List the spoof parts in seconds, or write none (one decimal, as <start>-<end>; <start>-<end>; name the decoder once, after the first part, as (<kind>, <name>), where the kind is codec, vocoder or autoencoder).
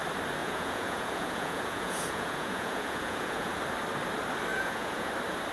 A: 0.4-3.6 (vocoder, Vocos); 4.5-5.1